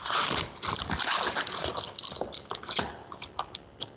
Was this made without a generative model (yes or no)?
yes